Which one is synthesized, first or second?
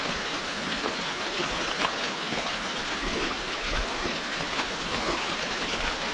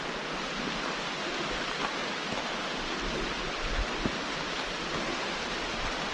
first